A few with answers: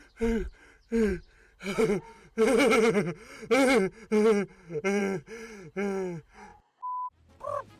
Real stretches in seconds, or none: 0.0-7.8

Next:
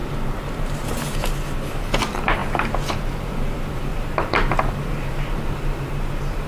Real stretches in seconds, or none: none